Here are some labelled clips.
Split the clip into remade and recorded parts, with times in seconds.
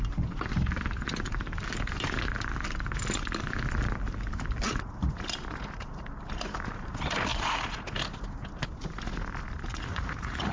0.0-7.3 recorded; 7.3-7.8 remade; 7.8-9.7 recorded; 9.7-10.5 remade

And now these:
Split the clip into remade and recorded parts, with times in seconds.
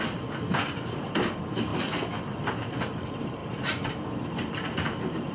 0.0-1.7 remade; 1.7-2.9 recorded; 2.9-5.3 remade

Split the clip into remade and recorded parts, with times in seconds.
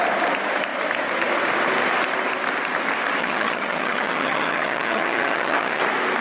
0.0-3.2 recorded; 3.2-5.8 remade; 5.8-6.2 recorded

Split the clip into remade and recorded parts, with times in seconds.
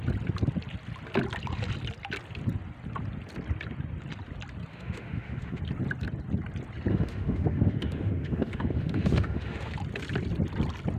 0.0-4.7 recorded; 4.7-5.6 remade; 5.6-6.9 recorded; 6.9-9.7 remade; 9.7-11.0 recorded